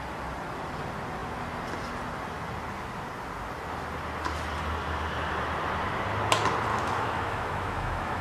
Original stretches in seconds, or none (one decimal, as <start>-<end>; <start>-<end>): 0.0-6.7